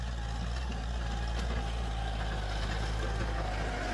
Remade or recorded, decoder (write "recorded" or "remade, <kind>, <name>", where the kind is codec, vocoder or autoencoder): recorded